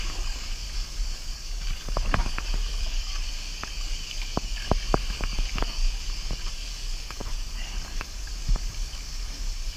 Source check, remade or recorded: remade